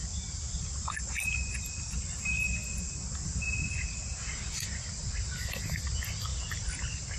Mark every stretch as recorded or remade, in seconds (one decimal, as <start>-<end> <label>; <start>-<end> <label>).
0.0-7.2 recorded

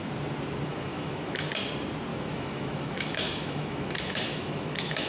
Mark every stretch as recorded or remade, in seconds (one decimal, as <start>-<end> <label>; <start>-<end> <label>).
0.0-0.7 recorded; 0.7-1.5 remade; 1.5-2.1 recorded; 2.1-5.1 remade

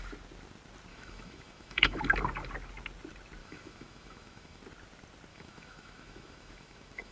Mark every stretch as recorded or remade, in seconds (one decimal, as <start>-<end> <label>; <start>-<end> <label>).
0.0-0.9 recorded; 0.9-2.0 remade; 2.0-3.4 recorded; 3.4-4.6 remade; 4.6-5.3 recorded; 5.3-7.1 remade

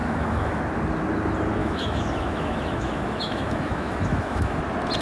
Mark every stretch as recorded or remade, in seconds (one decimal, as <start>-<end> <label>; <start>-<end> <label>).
0.0-0.6 remade; 0.6-1.6 recorded; 1.6-4.6 remade; 4.6-5.0 recorded

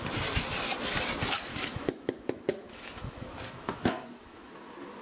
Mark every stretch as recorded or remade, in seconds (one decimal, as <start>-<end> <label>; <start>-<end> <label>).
0.0-1.5 recorded; 1.5-4.5 remade; 4.5-5.0 recorded

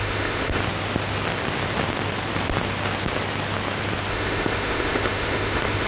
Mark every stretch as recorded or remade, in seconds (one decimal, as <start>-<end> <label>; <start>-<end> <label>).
0.0-0.6 remade; 0.6-4.1 recorded; 4.1-5.9 remade

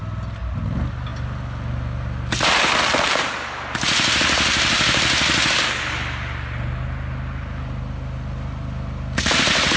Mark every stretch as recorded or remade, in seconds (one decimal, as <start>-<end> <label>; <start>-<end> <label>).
0.0-9.8 recorded